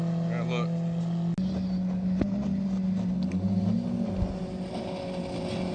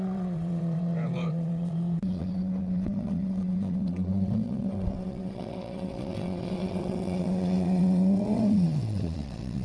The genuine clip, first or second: first